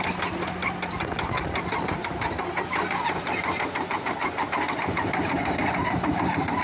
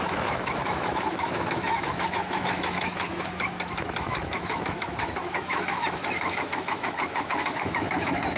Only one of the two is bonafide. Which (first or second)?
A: first